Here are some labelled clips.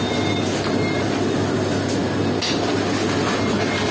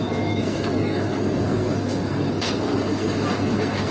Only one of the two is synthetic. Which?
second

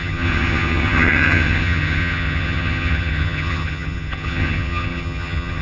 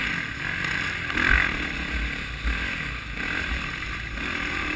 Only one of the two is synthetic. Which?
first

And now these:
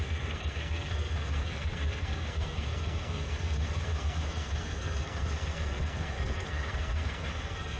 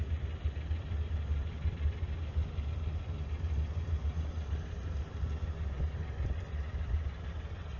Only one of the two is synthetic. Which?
first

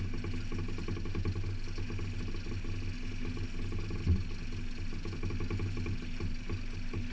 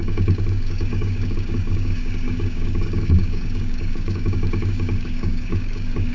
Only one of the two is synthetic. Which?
second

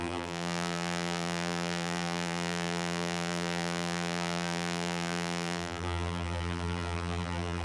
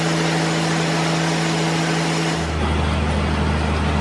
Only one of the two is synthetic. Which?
first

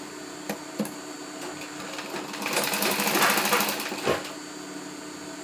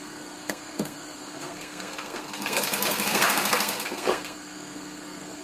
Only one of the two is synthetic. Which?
second